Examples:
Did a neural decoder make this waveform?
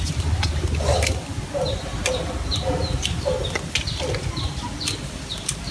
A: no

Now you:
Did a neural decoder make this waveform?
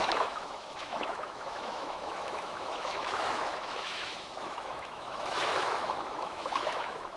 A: yes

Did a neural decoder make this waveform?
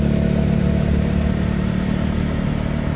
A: no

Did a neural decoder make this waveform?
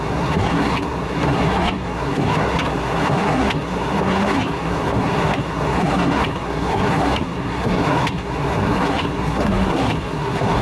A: yes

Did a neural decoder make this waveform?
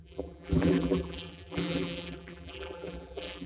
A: yes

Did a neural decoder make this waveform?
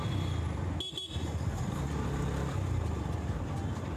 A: no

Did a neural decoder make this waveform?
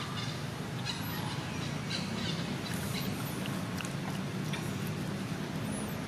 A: no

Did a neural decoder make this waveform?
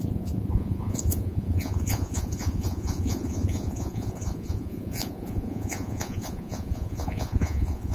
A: yes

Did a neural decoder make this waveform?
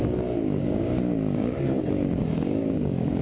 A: yes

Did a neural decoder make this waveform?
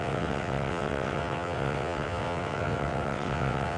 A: yes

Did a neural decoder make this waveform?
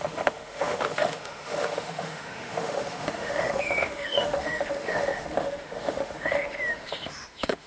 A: yes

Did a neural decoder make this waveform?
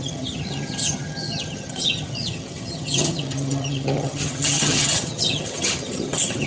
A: yes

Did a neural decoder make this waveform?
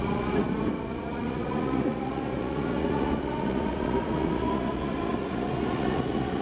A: yes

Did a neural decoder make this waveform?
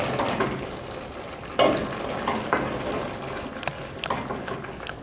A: no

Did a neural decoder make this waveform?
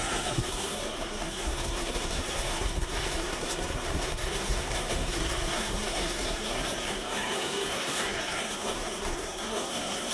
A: yes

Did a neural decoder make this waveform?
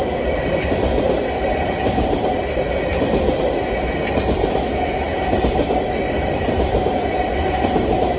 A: no